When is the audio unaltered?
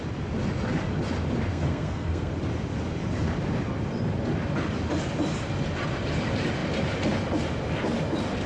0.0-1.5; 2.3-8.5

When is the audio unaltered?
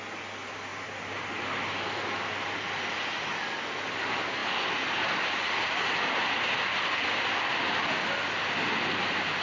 0.0-9.4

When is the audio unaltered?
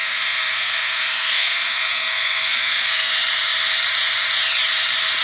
3.1-5.2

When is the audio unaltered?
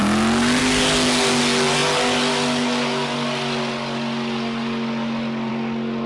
0.0-6.1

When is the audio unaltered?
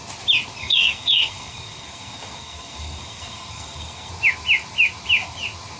0.0-0.6; 4.1-5.8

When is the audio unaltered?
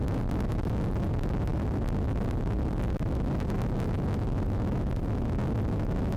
0.0-6.2